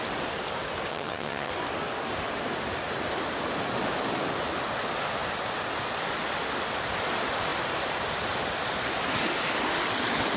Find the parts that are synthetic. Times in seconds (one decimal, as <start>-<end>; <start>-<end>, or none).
0.9-1.5